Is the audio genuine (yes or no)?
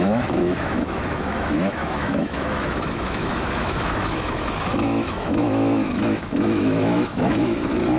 no